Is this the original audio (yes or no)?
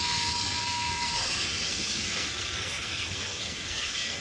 no